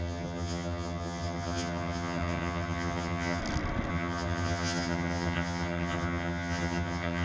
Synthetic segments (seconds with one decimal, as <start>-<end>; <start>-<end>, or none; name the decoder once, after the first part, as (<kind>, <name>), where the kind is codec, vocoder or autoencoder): 0.0-3.4 (vocoder, HiFi-GAN); 3.9-7.2